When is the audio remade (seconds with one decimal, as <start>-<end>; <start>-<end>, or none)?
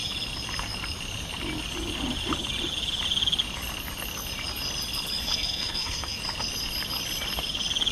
5.2-6.2